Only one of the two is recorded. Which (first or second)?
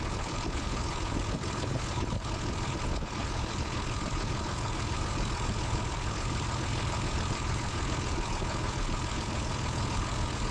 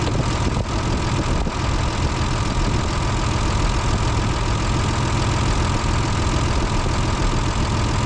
second